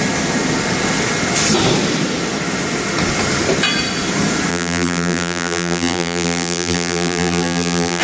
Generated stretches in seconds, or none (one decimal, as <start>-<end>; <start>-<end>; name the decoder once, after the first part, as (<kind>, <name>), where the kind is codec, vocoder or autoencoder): 4.5-8.0 (vocoder, BigVGAN v2)